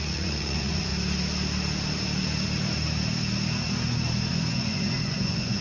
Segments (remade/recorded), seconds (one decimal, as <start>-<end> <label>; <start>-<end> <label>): 0.0-0.9 remade; 0.9-4.3 recorded; 4.3-5.6 remade